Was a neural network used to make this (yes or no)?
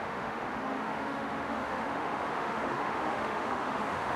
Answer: yes